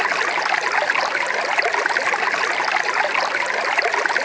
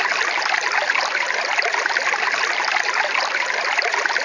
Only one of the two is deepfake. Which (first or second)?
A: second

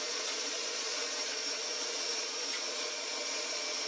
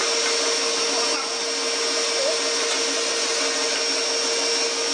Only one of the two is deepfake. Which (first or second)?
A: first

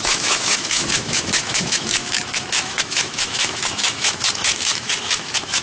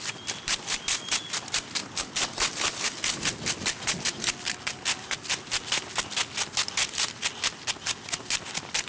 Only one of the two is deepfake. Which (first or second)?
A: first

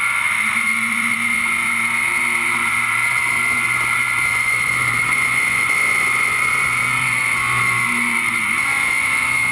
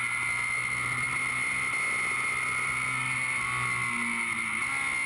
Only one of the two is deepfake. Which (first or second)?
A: first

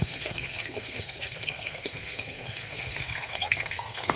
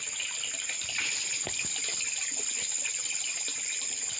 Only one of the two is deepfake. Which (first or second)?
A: first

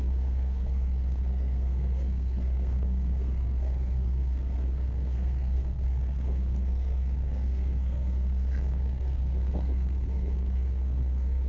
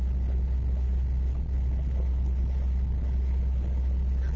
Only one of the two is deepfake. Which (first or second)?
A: first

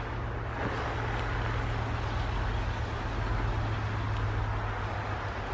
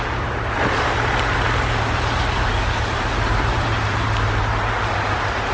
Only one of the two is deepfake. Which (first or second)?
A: second